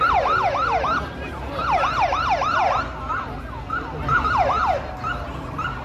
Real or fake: real